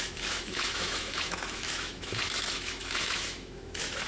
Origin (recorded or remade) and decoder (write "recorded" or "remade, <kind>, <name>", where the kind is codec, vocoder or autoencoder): remade, autoencoder, DAC-VAE